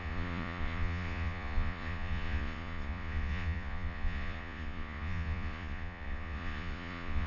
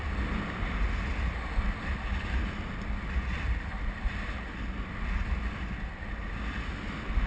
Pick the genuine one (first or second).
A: second